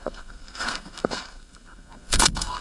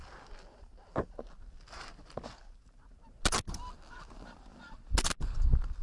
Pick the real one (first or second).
second